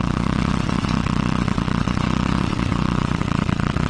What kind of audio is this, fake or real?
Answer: fake